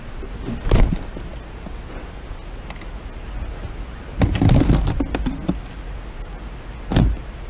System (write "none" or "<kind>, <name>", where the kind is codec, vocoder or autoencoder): none